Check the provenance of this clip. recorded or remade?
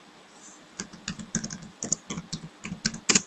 recorded